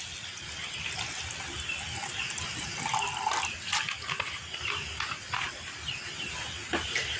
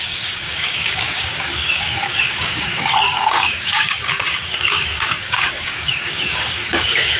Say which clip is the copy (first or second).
second